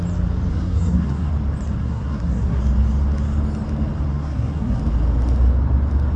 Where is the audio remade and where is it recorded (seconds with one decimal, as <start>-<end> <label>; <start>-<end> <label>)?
0.0-0.5 recorded; 0.5-1.3 remade; 1.3-1.8 recorded; 1.8-2.6 remade; 2.6-4.1 recorded; 4.1-4.8 remade; 4.8-6.2 recorded